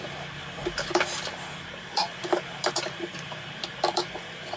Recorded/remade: remade